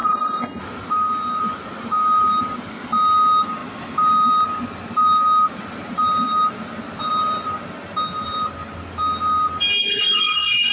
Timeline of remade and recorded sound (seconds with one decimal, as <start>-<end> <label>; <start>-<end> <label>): 0.0-0.6 remade; 0.6-9.8 recorded; 9.8-10.7 remade